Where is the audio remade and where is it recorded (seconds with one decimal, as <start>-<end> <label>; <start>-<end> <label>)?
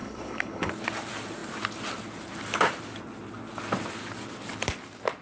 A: 0.0-0.7 remade; 0.7-5.2 recorded